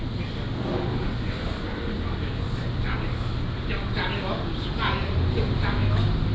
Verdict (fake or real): real